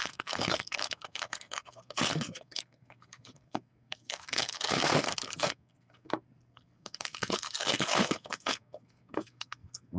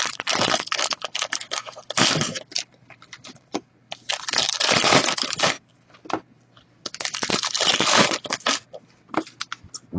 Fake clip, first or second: first